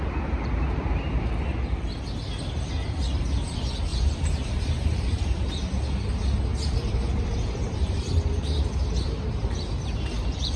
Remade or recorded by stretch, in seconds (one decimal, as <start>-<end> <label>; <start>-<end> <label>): 0.0-3.9 recorded; 3.9-5.4 remade; 5.4-6.5 recorded; 6.5-9.7 remade; 9.7-10.6 recorded